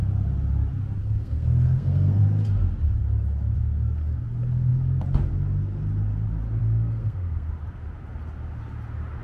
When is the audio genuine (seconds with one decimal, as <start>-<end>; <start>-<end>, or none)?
0.0-1.0; 2.2-6.6; 7.5-9.2